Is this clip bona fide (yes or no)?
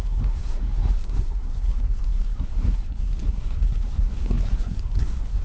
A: no